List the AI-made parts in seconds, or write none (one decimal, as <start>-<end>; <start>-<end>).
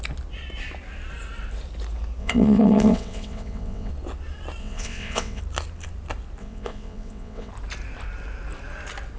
2.2-3.9; 4.6-5.4; 6.4-7.5